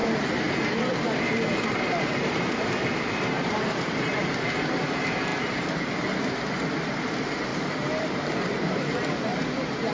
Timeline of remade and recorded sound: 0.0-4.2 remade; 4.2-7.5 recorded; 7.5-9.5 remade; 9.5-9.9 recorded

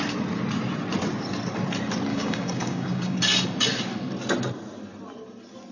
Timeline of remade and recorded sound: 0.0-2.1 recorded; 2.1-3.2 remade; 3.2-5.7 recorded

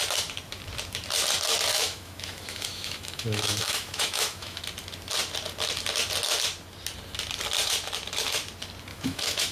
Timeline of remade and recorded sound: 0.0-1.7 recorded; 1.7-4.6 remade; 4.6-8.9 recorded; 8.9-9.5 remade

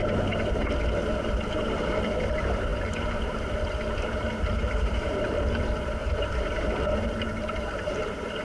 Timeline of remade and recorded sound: 0.0-2.7 recorded; 2.7-5.6 remade; 5.6-6.0 recorded; 6.0-8.4 remade

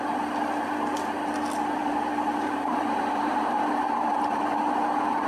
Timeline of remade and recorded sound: 0.0-1.8 recorded; 1.8-4.6 remade; 4.6-5.3 recorded